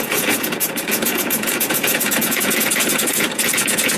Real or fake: fake